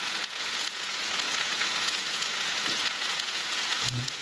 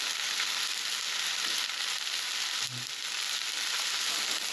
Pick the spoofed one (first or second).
first